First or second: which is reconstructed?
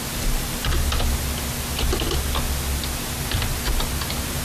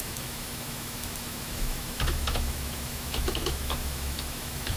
second